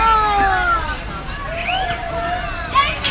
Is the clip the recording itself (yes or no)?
yes